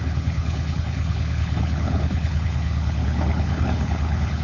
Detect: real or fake fake